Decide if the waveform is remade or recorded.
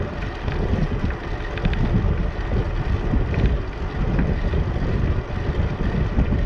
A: recorded